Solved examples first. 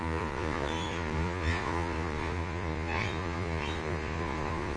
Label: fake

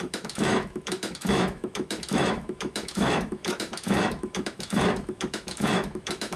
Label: fake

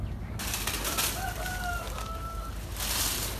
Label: real